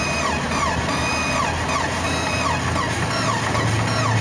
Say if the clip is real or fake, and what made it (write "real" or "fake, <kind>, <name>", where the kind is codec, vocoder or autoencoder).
real